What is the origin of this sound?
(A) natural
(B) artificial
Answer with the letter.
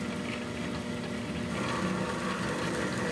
A